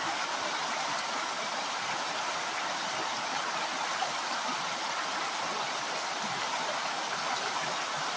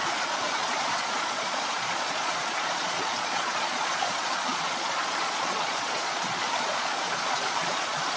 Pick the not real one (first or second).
second